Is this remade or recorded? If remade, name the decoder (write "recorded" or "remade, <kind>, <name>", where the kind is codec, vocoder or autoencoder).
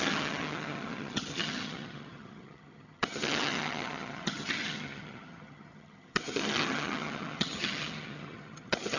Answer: remade, vocoder, HiFi-GAN